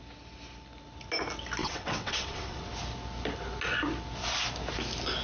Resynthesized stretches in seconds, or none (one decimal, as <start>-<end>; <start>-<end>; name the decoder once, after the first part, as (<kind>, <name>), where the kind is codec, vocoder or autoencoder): 1.6-2.6 (vocoder, WaveNeXt)